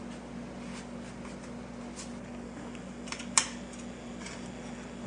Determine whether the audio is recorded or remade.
recorded